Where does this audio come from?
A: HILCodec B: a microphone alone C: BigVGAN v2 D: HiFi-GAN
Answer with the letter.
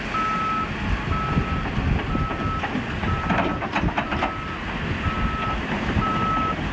B